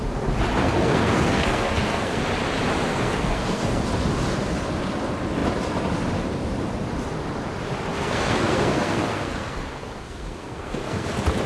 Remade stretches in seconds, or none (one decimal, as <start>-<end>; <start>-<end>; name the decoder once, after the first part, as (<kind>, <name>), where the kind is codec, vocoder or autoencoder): 0.6-2.2 (codec, SNAC); 2.9-3.8; 7.9-11.1